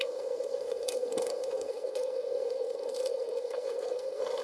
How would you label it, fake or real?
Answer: fake